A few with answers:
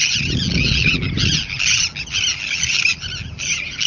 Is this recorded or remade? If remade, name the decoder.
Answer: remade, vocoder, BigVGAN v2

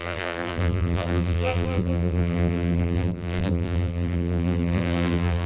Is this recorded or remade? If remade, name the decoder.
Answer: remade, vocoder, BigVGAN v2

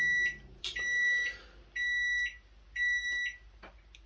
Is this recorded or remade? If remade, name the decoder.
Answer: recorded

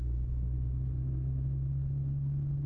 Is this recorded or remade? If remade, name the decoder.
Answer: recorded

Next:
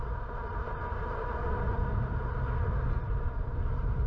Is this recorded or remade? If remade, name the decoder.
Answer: recorded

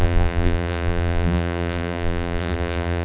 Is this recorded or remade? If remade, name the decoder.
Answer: remade, vocoder, BigVGAN v2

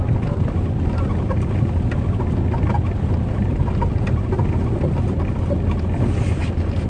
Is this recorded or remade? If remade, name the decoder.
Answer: recorded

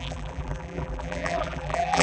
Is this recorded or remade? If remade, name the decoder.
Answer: remade, vocoder, BigVGAN v2